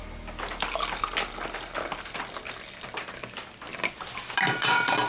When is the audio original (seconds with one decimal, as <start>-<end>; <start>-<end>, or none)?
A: 0.0-5.1